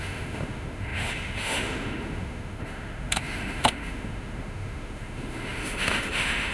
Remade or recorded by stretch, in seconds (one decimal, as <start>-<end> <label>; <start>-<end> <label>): 0.0-6.5 remade

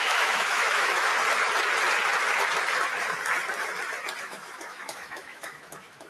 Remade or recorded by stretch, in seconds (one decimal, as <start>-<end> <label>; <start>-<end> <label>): 0.0-1.1 remade; 1.1-4.2 recorded; 4.2-6.1 remade